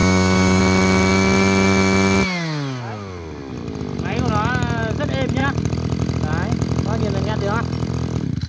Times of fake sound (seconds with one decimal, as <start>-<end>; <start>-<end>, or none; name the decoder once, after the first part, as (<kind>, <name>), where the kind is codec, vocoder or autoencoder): 0.0-0.6 (codec, DAC)